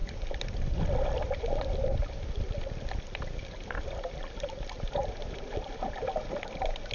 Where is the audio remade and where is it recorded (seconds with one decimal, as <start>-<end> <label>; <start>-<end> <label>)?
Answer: 0.0-0.8 remade; 0.8-2.0 recorded; 2.0-6.1 remade; 6.1-6.9 recorded